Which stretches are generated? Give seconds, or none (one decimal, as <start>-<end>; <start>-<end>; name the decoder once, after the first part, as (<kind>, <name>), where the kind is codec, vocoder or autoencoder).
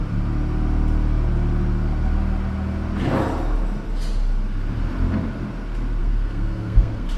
6.0-7.2 (codec, SNAC)